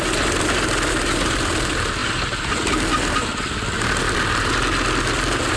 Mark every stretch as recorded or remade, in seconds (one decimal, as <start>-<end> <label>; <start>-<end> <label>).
0.0-5.6 recorded